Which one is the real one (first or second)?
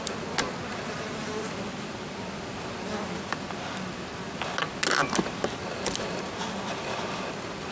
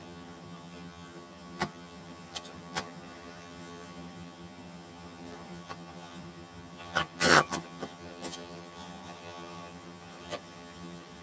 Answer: first